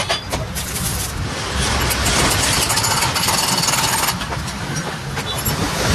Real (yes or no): yes